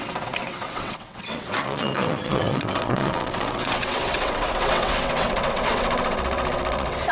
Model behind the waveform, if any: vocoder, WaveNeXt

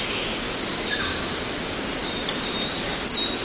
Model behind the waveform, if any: none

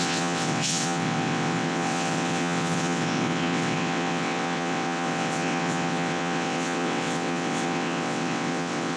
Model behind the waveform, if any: vocoder, WaveNeXt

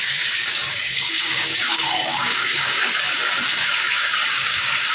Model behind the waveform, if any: codec, DAC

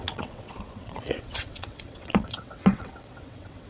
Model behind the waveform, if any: vocoder, WaveNeXt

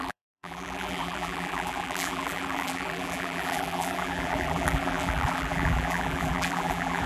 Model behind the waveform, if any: vocoder, BigVGAN v2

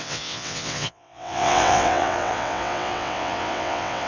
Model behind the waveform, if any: vocoder, WaveNeXt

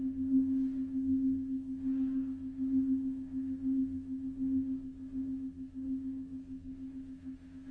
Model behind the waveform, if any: codec, DAC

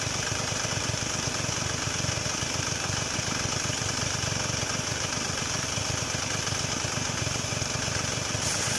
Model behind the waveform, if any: none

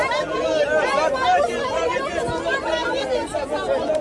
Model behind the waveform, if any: none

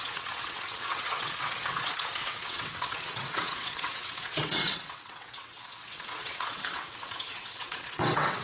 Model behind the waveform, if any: vocoder, WaveNeXt